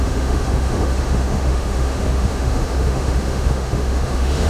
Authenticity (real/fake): fake